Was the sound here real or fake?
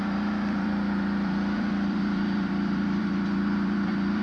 fake